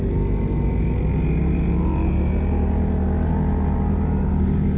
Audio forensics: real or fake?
real